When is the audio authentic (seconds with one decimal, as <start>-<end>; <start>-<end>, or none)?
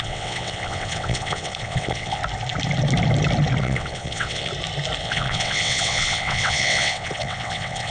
2.2-3.6; 4.5-5.0